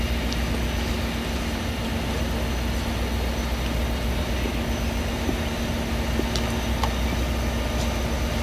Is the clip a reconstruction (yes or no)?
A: no